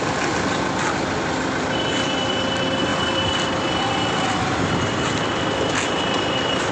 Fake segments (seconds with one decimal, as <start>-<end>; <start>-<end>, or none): none